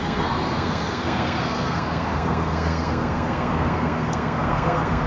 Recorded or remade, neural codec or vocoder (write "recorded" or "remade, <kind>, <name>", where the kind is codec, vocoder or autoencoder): remade, codec, SNAC